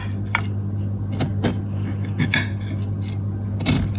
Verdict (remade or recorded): recorded